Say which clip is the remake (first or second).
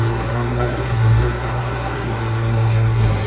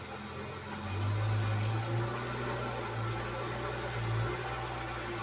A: first